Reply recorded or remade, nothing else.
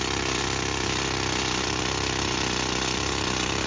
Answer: recorded